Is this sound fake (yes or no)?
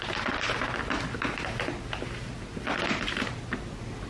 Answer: no